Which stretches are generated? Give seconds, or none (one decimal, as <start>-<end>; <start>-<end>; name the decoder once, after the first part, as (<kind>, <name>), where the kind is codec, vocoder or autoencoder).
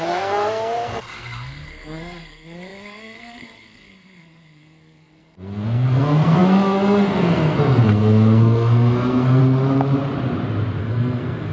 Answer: 0.0-9.4 (codec, SNAC); 10.8-11.5